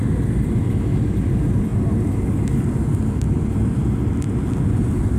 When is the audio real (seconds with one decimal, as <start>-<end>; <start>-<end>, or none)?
0.0-5.2